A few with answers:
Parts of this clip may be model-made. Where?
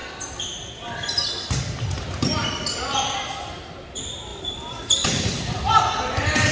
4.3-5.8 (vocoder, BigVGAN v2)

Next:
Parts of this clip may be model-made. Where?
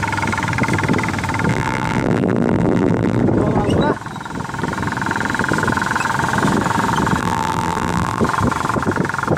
1.5-3.2 (vocoder, BigVGAN v2); 7.2-8.2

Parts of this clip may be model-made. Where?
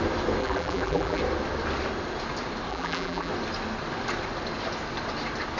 0.4-1.2 (vocoder, BigVGAN v2); 2.7-3.3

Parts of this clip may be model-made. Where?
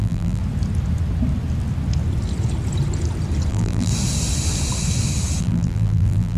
0.0-0.4 (vocoder, BigVGAN v2); 3.5-3.9; 5.4-6.4